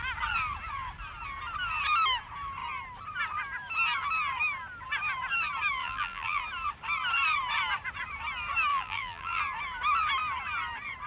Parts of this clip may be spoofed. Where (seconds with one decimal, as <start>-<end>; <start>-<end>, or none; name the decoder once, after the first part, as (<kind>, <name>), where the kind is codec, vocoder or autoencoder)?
5.8-6.4 (vocoder, BigVGAN v2); 8.7-9.4